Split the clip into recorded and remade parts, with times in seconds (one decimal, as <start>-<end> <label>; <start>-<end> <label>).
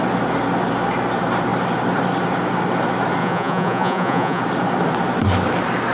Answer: 0.0-3.2 recorded; 3.2-4.4 remade; 4.4-5.9 recorded